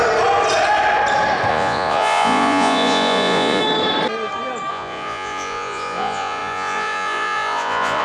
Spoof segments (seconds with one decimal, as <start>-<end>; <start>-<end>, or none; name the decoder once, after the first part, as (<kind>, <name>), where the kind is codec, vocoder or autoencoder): 1.5-3.6 (vocoder, Vocos); 4.7-8.0